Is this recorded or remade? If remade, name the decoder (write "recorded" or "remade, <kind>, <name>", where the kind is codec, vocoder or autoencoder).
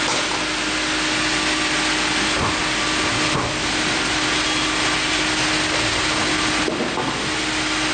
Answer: recorded